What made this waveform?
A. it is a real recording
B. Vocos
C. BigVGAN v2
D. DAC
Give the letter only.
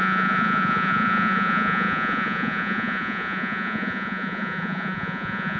B